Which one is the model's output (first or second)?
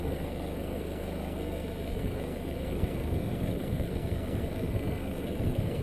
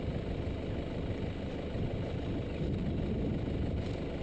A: first